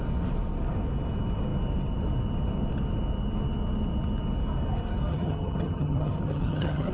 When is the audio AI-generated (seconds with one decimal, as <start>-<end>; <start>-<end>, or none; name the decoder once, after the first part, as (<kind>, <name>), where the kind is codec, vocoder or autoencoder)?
5.1-6.9 (vocoder, HiFi-GAN)